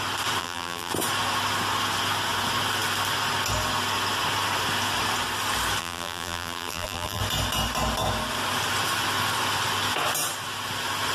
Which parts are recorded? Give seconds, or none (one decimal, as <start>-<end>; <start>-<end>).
0.0-0.4; 0.9-5.8; 7.2-11.1